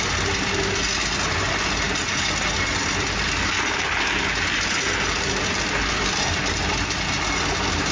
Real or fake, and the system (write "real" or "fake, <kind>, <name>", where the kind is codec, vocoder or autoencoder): real